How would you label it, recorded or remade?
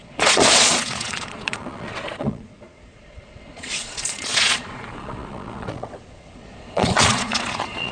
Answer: remade